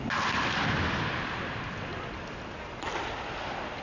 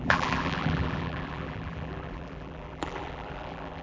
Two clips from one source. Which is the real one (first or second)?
first